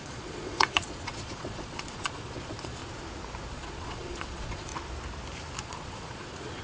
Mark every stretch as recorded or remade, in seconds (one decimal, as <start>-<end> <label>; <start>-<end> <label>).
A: 0.0-2.8 remade; 2.8-3.5 recorded; 3.5-4.7 remade; 4.7-5.6 recorded; 5.6-6.6 remade